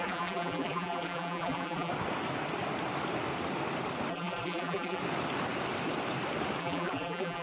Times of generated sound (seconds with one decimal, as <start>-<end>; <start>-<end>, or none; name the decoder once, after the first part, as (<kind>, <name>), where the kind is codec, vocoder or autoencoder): 0.0-1.9 (vocoder, BigVGAN v2); 4.1-5.0; 6.6-7.4